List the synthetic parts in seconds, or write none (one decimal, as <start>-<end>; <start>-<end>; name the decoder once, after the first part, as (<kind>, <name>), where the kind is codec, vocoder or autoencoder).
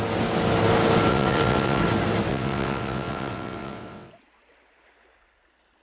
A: 1.1-1.8 (vocoder, WaveNeXt); 2.3-4.1